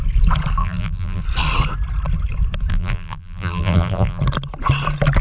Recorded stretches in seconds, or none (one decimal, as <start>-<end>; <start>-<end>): 0.0-0.6; 1.2-2.7; 4.2-5.2